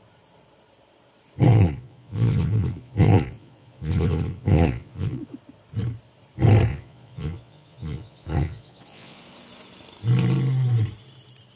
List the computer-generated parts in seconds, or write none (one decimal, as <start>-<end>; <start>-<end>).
1.5-5.4; 6.7-9.2